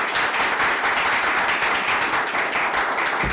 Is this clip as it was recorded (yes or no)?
yes